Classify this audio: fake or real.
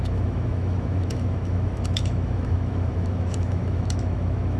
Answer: fake